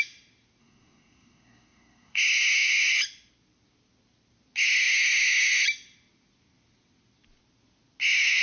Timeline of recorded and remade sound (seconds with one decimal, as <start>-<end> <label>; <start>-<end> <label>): 0.0-0.6 recorded; 0.6-2.2 remade; 2.2-8.4 recorded

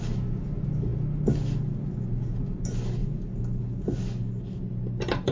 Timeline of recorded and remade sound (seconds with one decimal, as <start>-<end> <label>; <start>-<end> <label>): 0.0-5.3 recorded